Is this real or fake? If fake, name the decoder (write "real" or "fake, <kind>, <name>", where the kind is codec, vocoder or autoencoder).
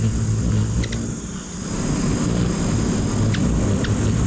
real